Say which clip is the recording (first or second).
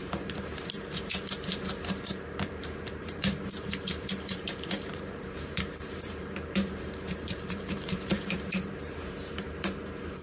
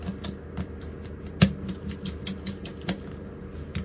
second